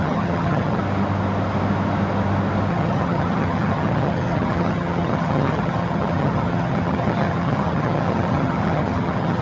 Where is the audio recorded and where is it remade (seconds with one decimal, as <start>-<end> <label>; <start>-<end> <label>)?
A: 0.0-0.8 remade; 0.8-2.7 recorded; 2.7-9.4 remade